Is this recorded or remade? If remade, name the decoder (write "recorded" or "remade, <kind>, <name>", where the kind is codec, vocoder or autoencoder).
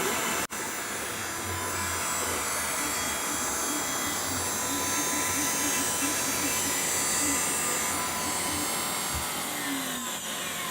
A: recorded